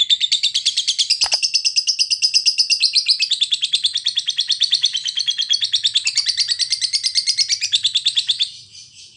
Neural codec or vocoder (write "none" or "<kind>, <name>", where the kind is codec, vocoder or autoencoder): none